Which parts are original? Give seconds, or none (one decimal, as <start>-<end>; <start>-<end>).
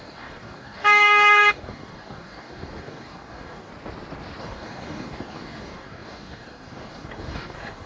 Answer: 3.7-4.4